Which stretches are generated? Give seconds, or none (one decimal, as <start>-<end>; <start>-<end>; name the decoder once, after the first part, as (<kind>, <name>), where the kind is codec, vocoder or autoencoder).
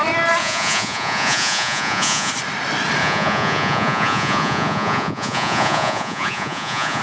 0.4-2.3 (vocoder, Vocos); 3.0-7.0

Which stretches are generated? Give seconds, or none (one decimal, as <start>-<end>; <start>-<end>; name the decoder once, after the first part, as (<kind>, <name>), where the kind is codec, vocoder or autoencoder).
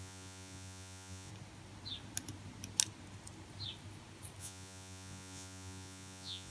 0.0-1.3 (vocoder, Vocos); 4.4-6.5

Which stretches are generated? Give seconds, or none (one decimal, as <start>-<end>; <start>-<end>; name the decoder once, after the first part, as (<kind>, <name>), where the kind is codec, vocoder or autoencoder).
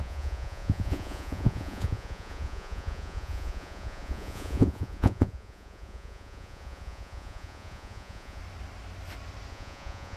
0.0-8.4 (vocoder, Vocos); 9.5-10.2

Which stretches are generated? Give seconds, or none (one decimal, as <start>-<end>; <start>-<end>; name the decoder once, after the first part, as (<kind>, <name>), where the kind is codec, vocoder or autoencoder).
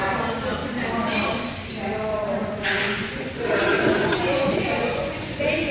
2.1-3.4 (vocoder, Vocos); 3.9-5.7